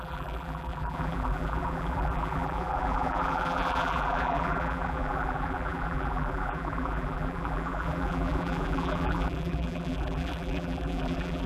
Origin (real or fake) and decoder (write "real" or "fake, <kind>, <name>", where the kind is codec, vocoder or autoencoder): fake, vocoder, BigVGAN v2